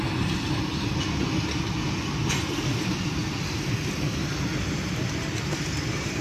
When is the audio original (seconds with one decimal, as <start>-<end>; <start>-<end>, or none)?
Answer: 0.0-6.2